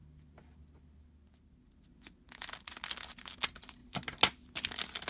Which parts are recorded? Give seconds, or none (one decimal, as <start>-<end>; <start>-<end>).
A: 0.0-5.1